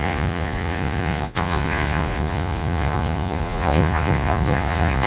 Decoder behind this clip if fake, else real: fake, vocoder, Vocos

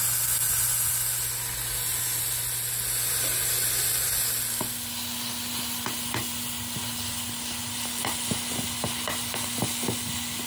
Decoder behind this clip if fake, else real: real